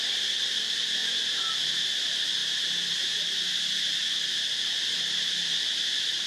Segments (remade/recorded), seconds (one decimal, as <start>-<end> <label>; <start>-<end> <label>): 0.0-1.0 recorded; 1.0-1.5 remade; 1.5-2.4 recorded; 2.4-5.5 remade; 5.5-6.3 recorded